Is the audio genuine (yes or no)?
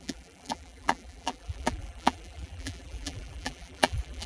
no